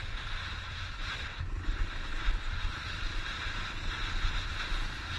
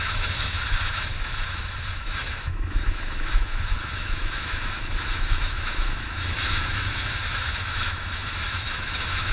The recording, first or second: first